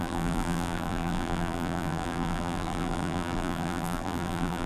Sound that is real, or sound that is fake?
fake